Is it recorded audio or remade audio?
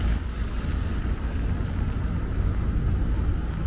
recorded